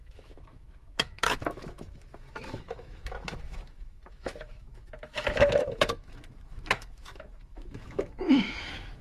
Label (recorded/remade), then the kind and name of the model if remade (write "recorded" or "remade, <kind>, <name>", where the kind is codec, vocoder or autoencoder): remade, autoencoder, DAC-VAE